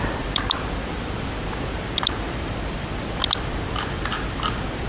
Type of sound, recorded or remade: remade